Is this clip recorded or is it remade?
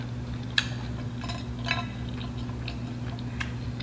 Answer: recorded